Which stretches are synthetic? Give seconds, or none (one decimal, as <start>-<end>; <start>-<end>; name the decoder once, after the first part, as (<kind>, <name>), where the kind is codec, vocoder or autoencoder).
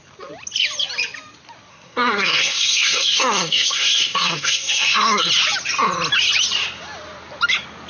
1.7-5.3 (codec, SNAC)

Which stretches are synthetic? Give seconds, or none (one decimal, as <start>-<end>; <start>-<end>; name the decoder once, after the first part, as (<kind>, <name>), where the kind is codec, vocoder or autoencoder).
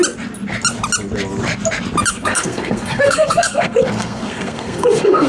2.1-5.3 (codec, SNAC)